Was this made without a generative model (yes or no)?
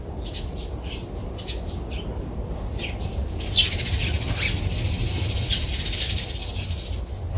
yes